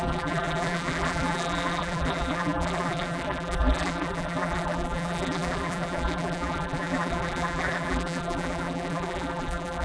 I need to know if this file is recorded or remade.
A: remade